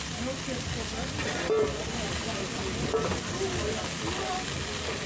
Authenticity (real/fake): real